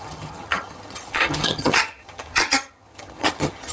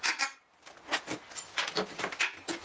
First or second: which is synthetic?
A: first